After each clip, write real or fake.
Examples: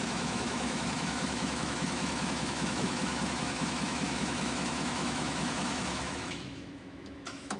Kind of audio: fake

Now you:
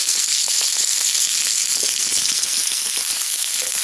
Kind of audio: fake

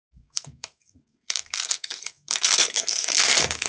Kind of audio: fake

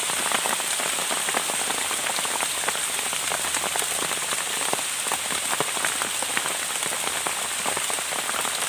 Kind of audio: real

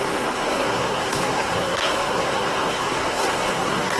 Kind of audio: fake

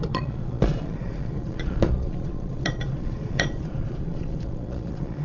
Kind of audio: fake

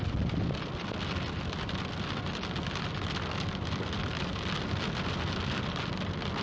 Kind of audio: real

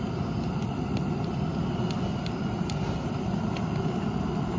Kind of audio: real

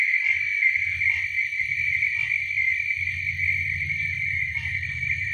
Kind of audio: real